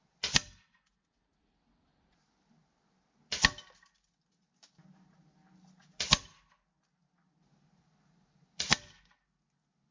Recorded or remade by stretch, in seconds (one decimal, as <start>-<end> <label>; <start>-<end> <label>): 0.0-9.9 recorded